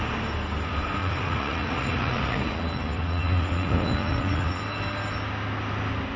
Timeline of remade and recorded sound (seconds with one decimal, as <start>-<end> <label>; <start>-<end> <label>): 0.0-1.0 recorded; 1.0-4.6 remade; 4.6-6.2 recorded